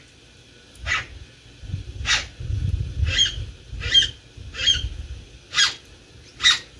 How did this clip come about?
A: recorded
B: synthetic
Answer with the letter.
A